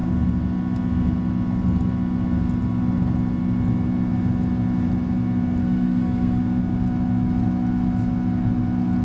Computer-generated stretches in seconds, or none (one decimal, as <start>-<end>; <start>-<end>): 5.6-6.4